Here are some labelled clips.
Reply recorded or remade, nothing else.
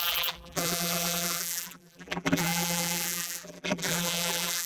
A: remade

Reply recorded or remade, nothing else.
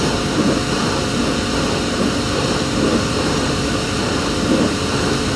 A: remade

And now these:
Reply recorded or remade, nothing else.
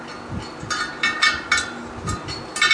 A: recorded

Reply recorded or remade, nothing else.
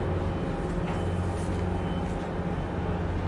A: recorded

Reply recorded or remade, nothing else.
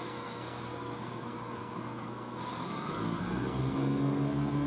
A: remade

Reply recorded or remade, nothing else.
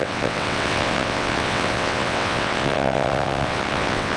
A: remade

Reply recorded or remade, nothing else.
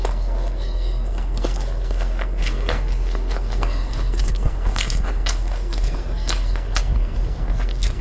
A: remade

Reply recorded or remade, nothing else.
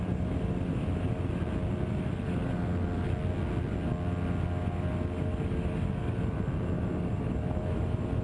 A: recorded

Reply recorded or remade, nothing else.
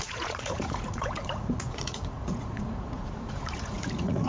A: remade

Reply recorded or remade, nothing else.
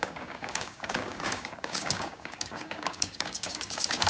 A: remade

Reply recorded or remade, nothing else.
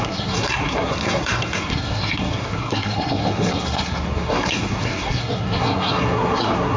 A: remade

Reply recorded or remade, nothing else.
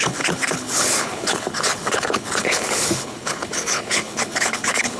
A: remade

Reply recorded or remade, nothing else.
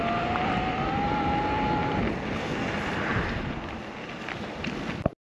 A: recorded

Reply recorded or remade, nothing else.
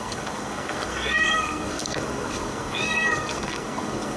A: remade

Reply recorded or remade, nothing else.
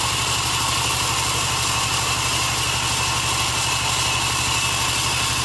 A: recorded